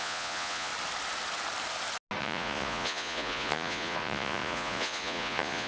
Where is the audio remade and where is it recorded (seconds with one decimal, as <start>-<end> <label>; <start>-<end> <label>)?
0.0-0.7 remade; 0.7-2.2 recorded; 2.2-5.7 remade